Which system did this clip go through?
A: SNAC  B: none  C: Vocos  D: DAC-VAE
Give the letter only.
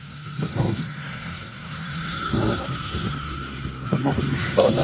A